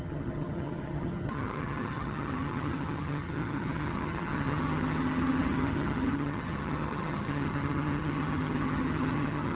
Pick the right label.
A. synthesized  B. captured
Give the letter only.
A